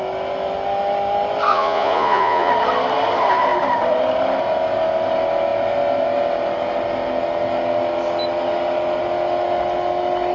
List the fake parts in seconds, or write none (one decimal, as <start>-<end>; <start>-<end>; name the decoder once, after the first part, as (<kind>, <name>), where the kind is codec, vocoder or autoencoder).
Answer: 1.5-2.5 (vocoder, Vocos)